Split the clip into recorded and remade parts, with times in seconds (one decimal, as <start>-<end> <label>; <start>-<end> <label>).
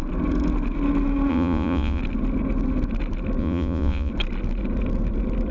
0.0-1.3 recorded; 1.3-2.0 remade; 2.0-3.4 recorded; 3.4-4.1 remade; 4.1-5.5 recorded